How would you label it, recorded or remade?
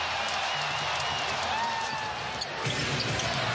recorded